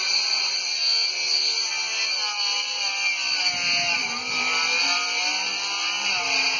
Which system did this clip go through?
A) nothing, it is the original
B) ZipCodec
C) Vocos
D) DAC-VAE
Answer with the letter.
A